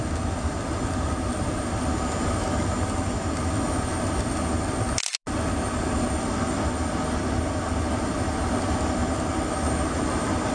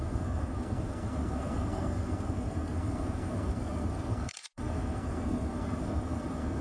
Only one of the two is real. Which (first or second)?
first